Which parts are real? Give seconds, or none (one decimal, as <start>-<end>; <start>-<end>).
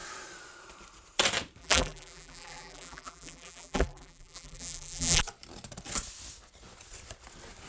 0.0-1.6; 5.2-7.7